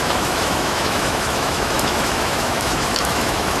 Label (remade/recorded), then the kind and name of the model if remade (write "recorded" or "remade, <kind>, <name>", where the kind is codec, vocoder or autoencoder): remade, autoencoder, DAC-VAE